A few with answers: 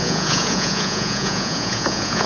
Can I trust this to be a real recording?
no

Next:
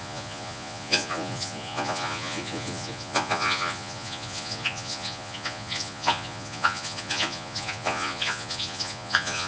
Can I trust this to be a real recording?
no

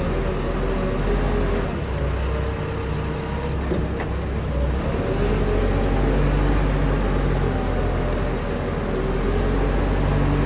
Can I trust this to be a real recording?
yes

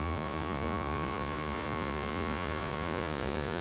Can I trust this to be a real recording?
no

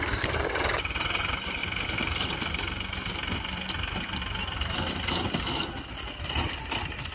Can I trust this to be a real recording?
yes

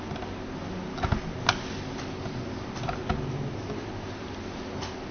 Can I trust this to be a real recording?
yes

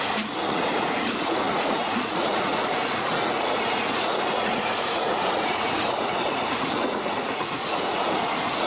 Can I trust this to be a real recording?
no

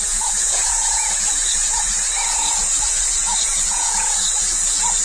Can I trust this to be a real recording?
no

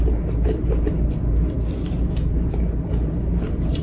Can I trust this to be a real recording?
yes